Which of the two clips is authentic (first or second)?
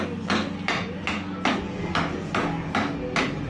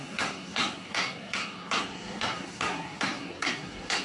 first